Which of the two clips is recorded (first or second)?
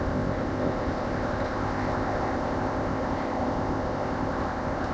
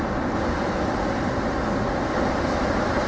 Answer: second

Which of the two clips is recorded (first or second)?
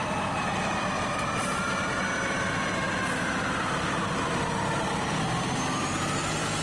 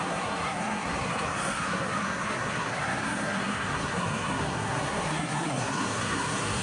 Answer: first